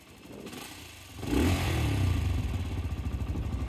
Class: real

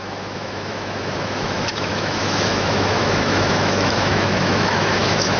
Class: fake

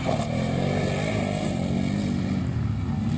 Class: real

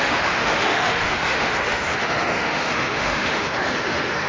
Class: fake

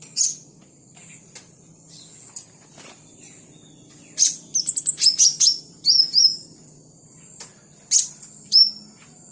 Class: real